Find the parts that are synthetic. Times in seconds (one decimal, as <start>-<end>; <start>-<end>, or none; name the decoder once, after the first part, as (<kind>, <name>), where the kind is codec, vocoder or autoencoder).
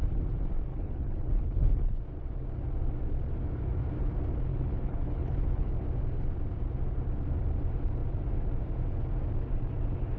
0.7-2.0 (codec, HILCodec); 4.5-5.7